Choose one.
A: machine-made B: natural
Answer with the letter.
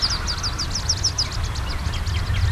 B